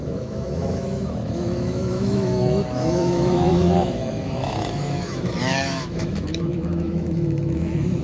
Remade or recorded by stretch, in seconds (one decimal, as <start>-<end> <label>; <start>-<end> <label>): 0.0-8.0 remade